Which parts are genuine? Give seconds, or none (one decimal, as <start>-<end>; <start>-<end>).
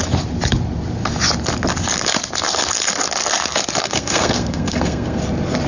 0.0-3.8; 5.2-5.7